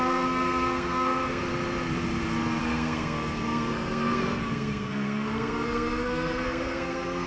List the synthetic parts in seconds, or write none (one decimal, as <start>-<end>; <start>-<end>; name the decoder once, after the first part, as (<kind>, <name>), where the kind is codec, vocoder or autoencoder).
0.0-1.5 (codec, SNAC); 2.6-7.3